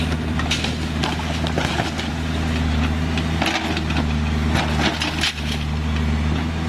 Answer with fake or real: real